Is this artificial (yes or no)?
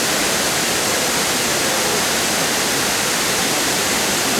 yes